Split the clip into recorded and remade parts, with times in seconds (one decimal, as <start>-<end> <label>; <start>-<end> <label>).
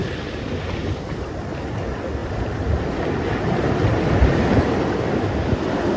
0.0-2.2 recorded; 2.2-6.0 remade